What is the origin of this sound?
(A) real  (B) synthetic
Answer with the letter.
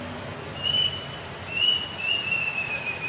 A